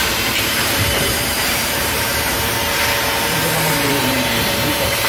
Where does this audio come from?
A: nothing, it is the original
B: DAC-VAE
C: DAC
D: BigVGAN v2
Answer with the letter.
D